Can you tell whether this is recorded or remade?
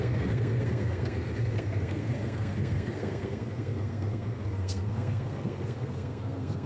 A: remade